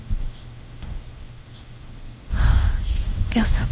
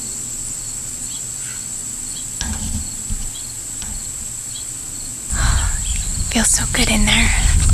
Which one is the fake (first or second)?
first